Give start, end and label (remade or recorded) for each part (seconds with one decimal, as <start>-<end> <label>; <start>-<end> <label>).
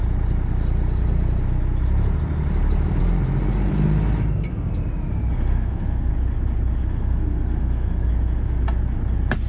0.0-5.5 recorded; 5.5-6.1 remade; 6.1-6.8 recorded; 6.8-8.1 remade; 8.1-9.5 recorded